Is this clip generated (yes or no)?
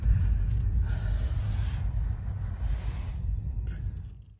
no